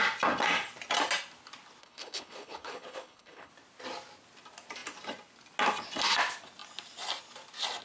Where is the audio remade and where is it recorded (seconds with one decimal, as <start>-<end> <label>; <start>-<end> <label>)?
0.0-1.8 recorded; 1.8-3.5 remade; 3.5-7.8 recorded